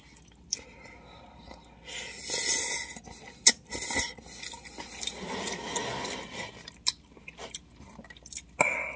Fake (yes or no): no